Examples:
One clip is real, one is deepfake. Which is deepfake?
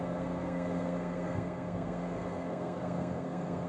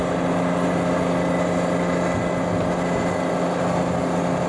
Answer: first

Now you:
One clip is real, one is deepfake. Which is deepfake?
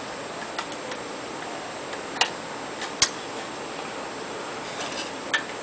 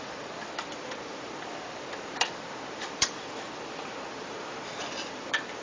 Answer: second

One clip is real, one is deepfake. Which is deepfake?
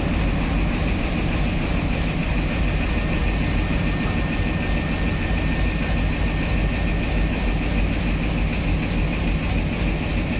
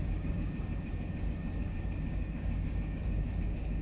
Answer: second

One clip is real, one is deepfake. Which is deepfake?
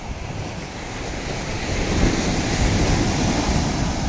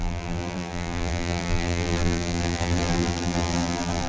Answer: second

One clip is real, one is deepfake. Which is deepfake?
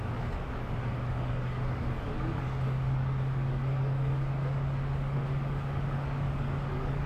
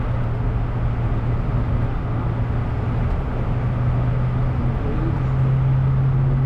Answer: first